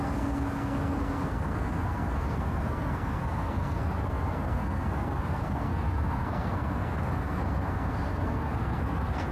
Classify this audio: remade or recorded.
remade